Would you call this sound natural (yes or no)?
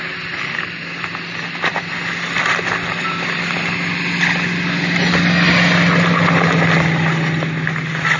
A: yes